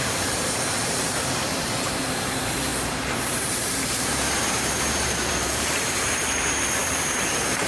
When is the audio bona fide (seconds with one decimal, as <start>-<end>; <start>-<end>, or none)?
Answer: none

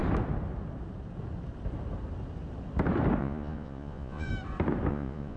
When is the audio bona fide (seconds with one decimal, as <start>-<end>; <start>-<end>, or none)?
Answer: 0.0-3.2; 4.3-4.9

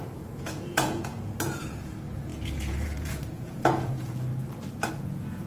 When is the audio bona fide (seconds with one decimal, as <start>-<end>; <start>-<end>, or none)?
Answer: 4.3-4.9

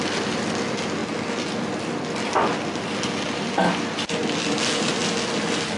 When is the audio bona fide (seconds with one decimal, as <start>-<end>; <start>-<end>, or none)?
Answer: 0.0-5.8

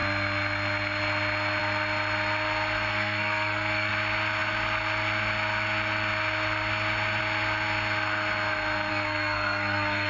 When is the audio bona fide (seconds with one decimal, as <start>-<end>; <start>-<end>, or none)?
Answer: 0.0-2.9; 3.9-8.9

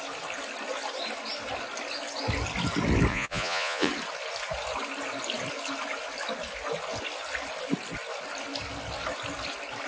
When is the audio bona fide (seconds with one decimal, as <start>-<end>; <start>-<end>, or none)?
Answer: 0.0-3.1; 3.9-9.9